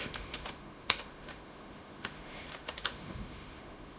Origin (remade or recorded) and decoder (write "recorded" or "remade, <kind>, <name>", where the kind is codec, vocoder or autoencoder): remade, autoencoder, DAC-VAE